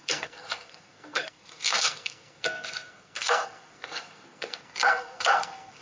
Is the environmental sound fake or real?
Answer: fake